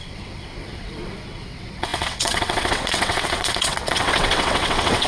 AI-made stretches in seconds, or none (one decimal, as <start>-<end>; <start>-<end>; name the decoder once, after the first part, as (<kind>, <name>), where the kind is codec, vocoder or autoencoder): 0.0-5.1 (vocoder, WaveNeXt)